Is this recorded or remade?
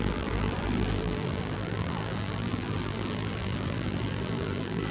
remade